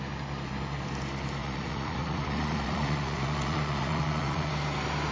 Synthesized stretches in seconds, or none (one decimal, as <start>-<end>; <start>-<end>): 1.4-4.5